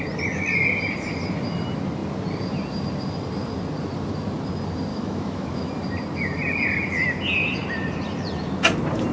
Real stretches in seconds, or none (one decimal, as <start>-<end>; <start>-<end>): 0.0-4.9; 5.7-9.1